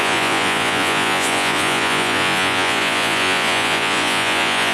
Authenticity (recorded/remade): remade